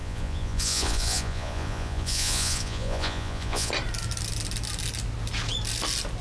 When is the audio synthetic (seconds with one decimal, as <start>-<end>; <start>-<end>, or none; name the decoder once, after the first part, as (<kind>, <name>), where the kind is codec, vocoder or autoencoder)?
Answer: 0.0-3.7 (vocoder, Vocos)